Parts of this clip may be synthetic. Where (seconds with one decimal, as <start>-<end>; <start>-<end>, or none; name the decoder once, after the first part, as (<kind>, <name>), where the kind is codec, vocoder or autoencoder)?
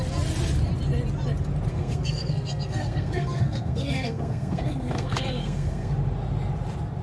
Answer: 1.7-5.9 (codec, SNAC)